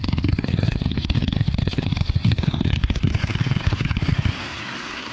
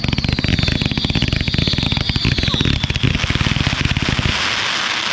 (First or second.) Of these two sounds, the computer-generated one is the first